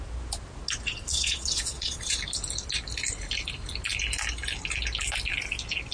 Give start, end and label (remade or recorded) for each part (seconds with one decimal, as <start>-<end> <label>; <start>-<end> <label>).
0.0-1.1 recorded; 1.1-2.2 remade; 2.2-5.9 recorded

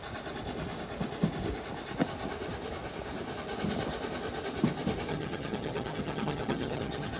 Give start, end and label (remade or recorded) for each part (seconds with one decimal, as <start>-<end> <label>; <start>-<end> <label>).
0.0-5.1 recorded; 5.1-7.2 remade

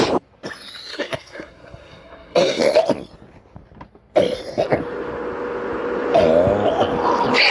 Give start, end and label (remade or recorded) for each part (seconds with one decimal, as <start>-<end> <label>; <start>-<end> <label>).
0.0-0.9 recorded; 0.9-2.6 remade; 2.6-7.5 recorded